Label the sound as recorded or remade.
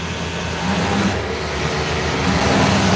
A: recorded